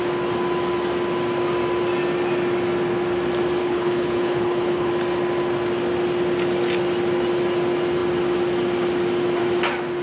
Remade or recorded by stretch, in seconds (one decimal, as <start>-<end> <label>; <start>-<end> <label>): 0.0-3.6 recorded; 3.6-4.9 remade; 4.9-10.0 recorded

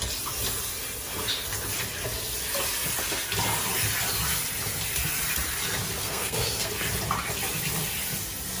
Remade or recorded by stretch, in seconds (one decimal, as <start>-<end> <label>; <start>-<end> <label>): 0.0-6.0 recorded; 6.0-6.7 remade; 6.7-8.6 recorded

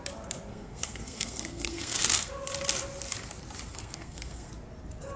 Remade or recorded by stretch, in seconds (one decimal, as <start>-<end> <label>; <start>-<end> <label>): 0.0-0.5 recorded; 0.5-2.3 remade; 2.3-3.7 recorded; 3.7-4.5 remade; 4.5-5.2 recorded

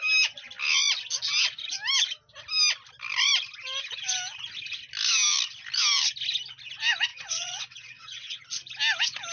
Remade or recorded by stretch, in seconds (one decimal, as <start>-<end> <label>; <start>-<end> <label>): 0.0-7.1 recorded; 7.1-8.4 remade; 8.4-9.3 recorded

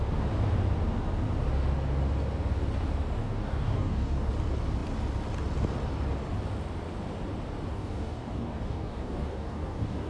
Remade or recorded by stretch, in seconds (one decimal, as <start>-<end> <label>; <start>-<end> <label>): 0.0-3.2 recorded; 3.2-4.3 remade; 4.3-7.7 recorded; 7.7-10.1 remade

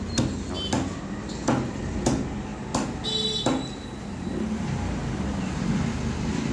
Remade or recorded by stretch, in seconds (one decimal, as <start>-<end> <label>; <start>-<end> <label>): 0.0-6.5 recorded